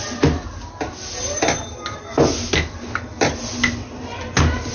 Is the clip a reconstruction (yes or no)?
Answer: no